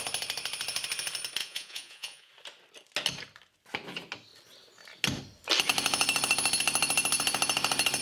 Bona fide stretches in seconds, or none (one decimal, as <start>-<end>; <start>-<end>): 0.0-1.4; 2.3-8.0